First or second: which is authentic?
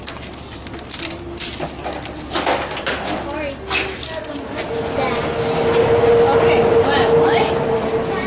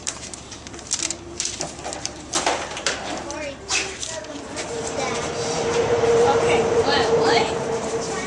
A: first